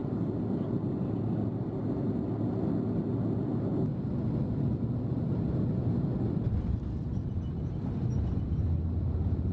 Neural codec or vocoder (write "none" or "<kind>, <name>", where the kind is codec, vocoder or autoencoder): none